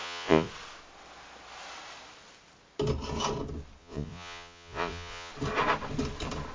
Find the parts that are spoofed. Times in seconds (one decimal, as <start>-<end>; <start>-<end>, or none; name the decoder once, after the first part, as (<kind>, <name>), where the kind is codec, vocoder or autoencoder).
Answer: 0.0-0.5 (vocoder, Vocos); 3.8-5.3